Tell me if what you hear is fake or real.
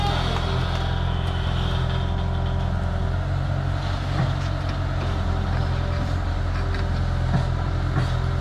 real